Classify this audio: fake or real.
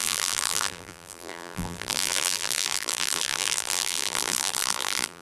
fake